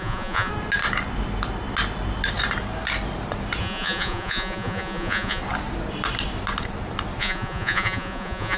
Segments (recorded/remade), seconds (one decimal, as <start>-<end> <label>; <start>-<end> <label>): 0.0-0.5 remade; 0.5-3.6 recorded; 3.6-5.4 remade; 5.4-7.2 recorded; 7.2-8.6 remade